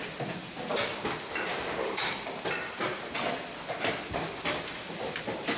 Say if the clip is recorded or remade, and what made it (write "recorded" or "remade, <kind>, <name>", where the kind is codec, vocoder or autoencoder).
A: recorded